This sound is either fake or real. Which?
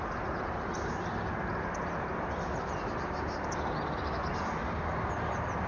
real